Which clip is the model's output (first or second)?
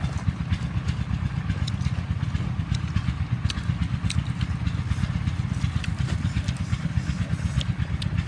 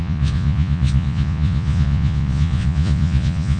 second